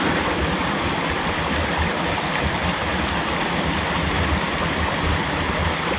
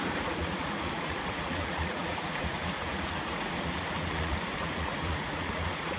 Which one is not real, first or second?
second